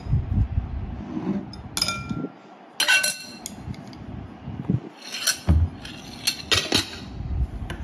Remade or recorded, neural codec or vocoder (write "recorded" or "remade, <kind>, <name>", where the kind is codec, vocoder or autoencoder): recorded